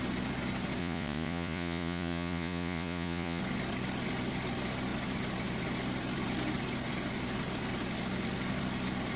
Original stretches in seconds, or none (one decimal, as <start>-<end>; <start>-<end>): 0.0-0.8; 3.4-9.2